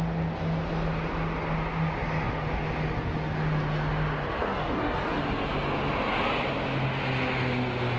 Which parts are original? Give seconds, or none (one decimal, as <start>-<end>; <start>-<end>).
0.0-4.4; 5.2-8.0